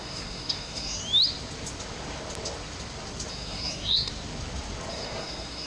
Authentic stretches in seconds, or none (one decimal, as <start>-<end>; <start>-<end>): 1.0-3.3; 4.1-4.9

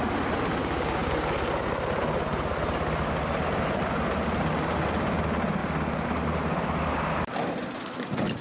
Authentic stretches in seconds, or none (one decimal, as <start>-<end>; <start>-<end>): 0.0-0.6; 1.1-8.4

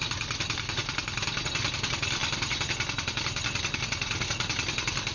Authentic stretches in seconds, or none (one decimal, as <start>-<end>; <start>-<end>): 0.0-5.1

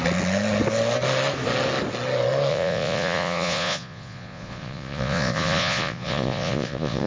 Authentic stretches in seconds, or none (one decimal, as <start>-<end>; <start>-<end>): 0.0-2.5

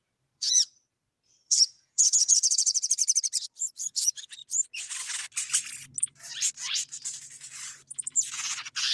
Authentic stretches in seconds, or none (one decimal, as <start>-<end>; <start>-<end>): 3.0-3.8; 4.4-6.0

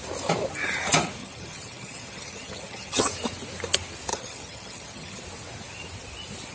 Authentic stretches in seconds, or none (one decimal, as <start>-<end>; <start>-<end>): 0.0-1.2; 3.1-4.1; 5.2-6.5